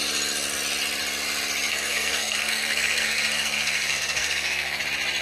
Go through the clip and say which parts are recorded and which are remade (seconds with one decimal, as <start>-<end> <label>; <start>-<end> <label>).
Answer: 0.0-1.7 recorded; 1.7-4.8 remade; 4.8-5.2 recorded